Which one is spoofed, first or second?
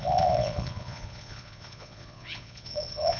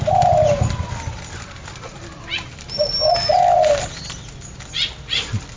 first